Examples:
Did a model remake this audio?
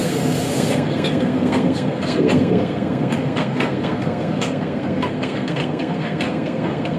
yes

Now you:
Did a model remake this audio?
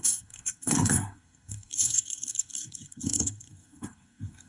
yes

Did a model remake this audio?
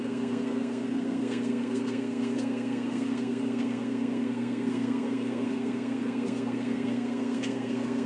yes